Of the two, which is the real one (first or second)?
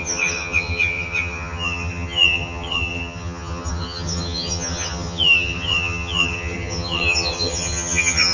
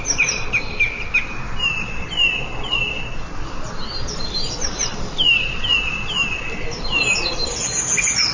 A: second